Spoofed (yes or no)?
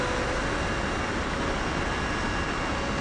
no